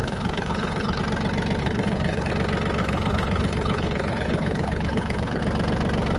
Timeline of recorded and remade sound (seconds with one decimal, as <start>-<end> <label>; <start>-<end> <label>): 0.0-1.0 remade; 1.0-1.6 recorded; 1.6-2.3 remade; 2.3-2.8 recorded; 2.8-5.4 remade; 5.4-6.2 recorded